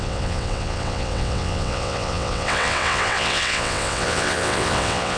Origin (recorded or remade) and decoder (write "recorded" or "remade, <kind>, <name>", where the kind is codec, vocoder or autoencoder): remade, vocoder, WaveNeXt